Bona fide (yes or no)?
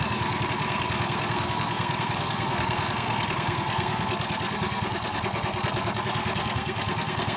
no